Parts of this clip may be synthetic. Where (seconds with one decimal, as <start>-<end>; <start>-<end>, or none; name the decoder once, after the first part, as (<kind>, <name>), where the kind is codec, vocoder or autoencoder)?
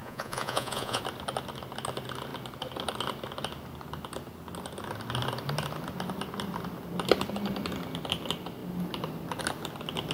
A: 0.0-1.0 (vocoder, Vocos)